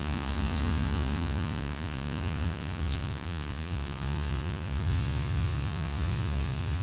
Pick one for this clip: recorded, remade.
remade